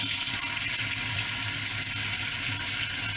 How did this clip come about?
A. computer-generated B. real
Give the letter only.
B